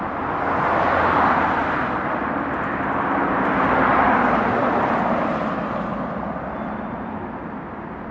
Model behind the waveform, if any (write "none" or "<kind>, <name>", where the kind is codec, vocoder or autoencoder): none